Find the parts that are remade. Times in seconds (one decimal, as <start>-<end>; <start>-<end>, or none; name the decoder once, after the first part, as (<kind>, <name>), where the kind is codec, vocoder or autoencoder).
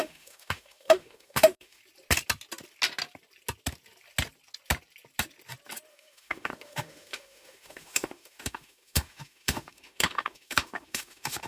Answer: 0.0-1.8 (autoencoder, DAC-VAE); 5.9-11.5